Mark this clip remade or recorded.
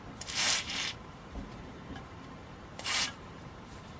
remade